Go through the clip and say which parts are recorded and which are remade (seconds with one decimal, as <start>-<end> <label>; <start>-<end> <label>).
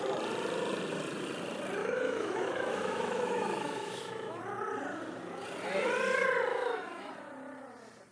0.0-1.8 recorded; 1.8-4.4 remade; 4.4-6.5 recorded; 6.5-7.1 remade; 7.1-8.1 recorded